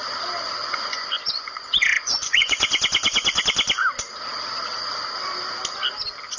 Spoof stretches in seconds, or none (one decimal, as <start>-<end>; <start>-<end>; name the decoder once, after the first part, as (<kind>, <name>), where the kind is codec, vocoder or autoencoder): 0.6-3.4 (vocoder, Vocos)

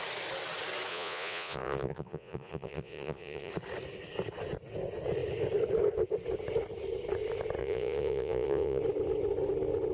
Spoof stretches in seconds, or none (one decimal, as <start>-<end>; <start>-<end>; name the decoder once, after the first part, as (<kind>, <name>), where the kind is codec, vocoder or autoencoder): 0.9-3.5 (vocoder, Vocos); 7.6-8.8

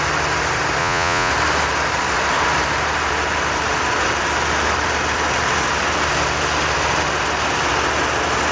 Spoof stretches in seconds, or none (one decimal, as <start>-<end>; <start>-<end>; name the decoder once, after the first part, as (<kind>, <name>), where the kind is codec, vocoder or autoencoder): 0.8-1.3 (vocoder, Vocos)

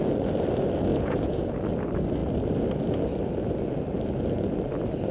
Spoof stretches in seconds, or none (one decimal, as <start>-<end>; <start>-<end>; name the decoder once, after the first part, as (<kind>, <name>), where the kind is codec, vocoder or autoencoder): 0.9-1.6 (vocoder, Vocos)